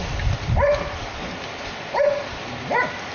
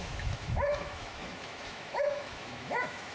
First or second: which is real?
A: first